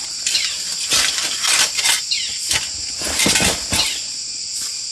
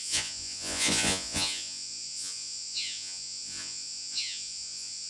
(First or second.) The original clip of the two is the first